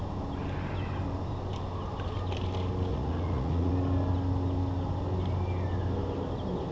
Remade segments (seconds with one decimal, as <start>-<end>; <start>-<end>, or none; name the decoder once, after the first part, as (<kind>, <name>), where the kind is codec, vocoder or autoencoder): 2.9-3.7 (vocoder, Vocos)